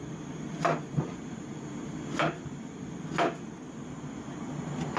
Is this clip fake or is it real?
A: real